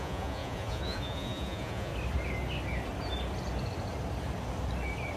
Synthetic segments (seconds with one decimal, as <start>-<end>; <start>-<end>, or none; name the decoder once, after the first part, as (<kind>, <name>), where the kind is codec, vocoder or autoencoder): 0.0-1.9 (vocoder, Vocos)